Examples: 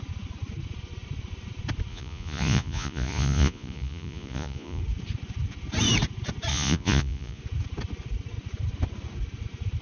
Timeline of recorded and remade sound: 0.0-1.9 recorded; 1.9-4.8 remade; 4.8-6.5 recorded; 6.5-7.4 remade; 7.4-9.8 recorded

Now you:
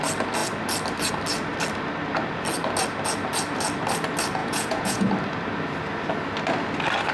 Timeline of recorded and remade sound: 0.0-4.4 recorded; 4.4-5.1 remade; 5.1-7.1 recorded

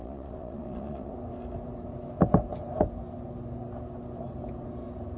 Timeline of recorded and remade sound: 0.0-1.1 remade; 1.1-5.2 recorded

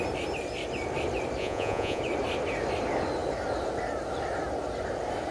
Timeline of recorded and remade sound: 0.0-1.4 recorded; 1.4-2.0 remade; 2.0-5.3 recorded

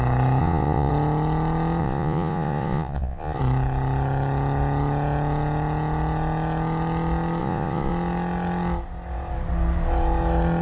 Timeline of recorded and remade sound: 0.0-0.4 recorded; 0.4-0.9 remade; 0.9-1.8 recorded; 1.8-3.4 remade; 3.4-7.4 recorded; 7.4-7.9 remade; 7.9-10.6 recorded